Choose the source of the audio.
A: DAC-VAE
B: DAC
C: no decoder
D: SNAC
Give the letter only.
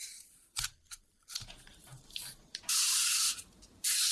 C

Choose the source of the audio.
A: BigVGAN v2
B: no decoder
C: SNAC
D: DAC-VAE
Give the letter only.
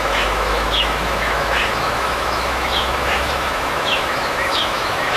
D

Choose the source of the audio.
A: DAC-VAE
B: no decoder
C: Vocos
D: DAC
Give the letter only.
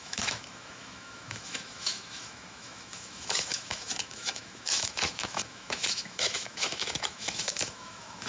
A